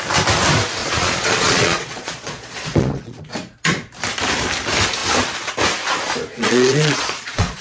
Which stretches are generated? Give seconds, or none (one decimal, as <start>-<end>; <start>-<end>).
0.8-3.2; 6.3-7.6